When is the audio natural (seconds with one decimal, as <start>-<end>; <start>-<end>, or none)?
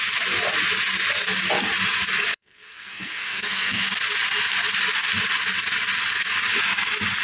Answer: 0.0-2.3; 3.8-7.2